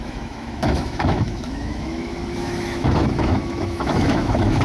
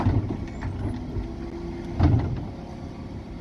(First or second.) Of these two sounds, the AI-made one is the first